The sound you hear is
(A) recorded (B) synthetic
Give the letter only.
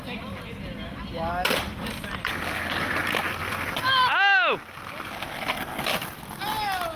A